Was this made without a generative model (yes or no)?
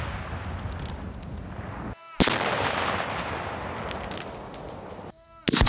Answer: yes